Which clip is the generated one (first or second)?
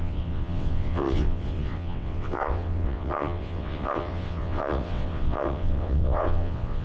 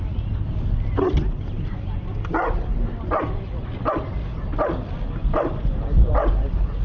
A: first